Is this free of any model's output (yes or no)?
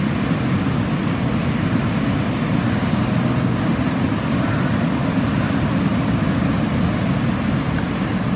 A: yes